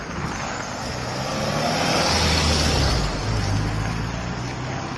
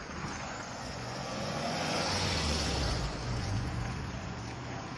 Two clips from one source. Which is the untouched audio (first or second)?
first